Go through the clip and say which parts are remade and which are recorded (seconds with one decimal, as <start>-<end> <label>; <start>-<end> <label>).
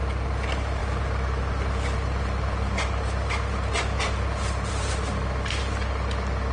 0.0-6.5 recorded